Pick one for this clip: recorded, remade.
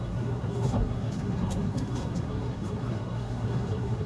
remade